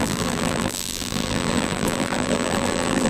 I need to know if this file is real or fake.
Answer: fake